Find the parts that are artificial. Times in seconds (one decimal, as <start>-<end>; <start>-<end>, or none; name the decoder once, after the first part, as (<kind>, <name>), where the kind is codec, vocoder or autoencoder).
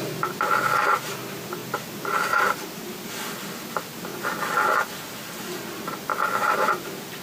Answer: 1.6-2.4 (vocoder, BigVGAN v2); 6.1-7.2